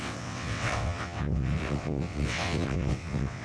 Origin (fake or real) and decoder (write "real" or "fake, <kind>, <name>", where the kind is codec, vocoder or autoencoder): fake, vocoder, WaveNeXt